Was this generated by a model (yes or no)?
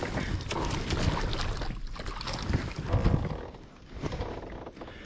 no